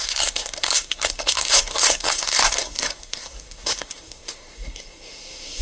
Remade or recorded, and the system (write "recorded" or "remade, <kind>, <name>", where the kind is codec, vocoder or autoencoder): remade, codec, SNAC